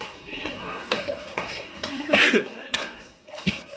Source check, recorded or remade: remade